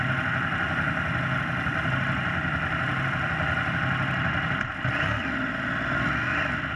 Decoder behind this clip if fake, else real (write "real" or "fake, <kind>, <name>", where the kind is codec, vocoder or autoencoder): real